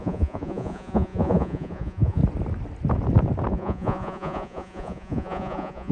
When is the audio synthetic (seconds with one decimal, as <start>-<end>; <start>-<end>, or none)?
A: 0.0-2.2; 3.5-5.9